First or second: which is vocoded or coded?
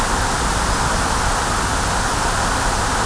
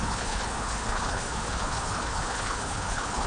second